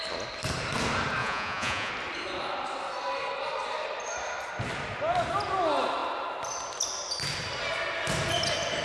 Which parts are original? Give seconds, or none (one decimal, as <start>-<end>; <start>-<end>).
0.0-1.2; 1.9-8.8